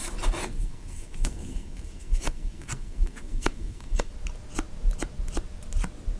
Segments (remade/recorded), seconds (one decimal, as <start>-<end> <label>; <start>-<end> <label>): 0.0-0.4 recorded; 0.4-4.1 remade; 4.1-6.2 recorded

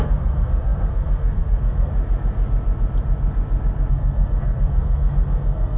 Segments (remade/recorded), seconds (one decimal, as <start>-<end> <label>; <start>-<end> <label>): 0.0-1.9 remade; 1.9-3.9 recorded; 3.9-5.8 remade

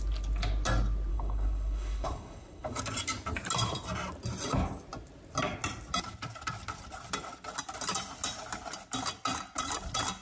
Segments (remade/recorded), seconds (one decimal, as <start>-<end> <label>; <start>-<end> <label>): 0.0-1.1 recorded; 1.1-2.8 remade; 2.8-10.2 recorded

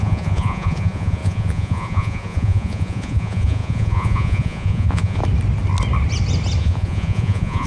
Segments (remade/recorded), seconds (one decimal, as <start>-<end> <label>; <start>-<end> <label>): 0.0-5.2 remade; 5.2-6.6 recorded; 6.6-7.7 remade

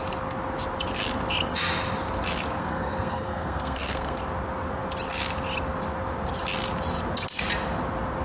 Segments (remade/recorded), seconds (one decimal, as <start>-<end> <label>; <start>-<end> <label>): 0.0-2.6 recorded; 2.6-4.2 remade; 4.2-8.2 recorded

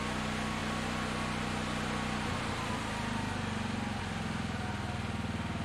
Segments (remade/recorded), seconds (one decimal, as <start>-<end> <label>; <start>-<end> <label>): 0.0-5.6 recorded

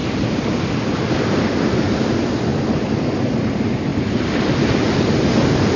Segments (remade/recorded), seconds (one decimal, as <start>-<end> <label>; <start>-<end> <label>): 0.0-1.4 remade; 1.4-3.9 recorded; 3.9-4.9 remade; 4.9-5.8 recorded